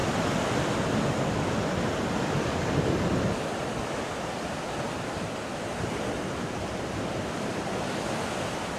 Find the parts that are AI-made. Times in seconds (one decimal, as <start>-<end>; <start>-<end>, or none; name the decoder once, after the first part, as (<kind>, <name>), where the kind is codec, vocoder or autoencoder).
none